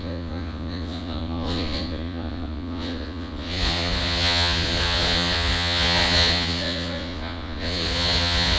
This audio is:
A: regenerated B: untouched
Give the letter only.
A